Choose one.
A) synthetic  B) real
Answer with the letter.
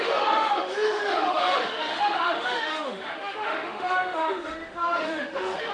A